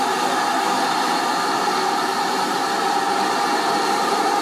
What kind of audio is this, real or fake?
fake